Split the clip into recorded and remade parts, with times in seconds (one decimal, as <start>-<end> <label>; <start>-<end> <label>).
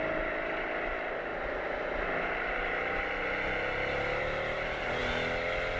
0.0-1.3 remade; 1.3-4.2 recorded; 4.2-5.0 remade; 5.0-5.8 recorded